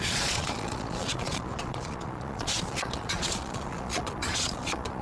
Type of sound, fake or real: fake